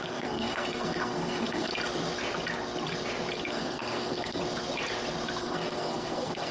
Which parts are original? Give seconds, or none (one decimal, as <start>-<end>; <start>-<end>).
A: 1.7-3.5; 4.4-5.4